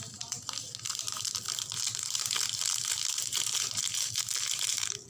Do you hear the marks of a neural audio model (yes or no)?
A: no